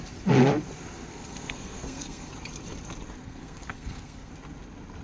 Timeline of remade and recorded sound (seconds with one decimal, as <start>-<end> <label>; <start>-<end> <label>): 0.0-1.0 recorded; 1.0-2.3 remade; 2.3-3.2 recorded; 3.2-4.3 remade; 4.3-5.0 recorded